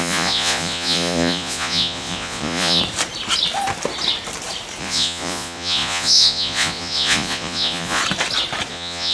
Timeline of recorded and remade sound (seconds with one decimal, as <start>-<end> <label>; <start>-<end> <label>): 0.0-2.8 remade; 2.8-4.8 recorded; 4.8-8.0 remade; 8.0-8.7 recorded; 8.7-9.1 remade